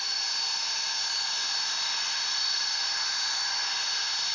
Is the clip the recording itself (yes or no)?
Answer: yes